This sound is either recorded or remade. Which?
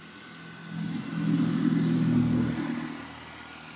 recorded